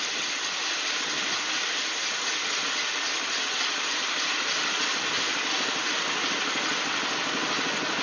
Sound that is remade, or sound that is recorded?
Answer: recorded